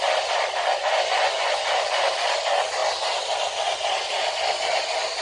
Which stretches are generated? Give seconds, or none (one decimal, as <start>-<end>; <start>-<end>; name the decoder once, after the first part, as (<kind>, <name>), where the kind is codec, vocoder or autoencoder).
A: 0.7-2.1 (vocoder, Vocos)